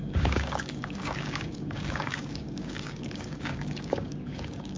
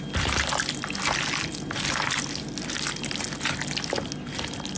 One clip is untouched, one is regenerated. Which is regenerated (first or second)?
first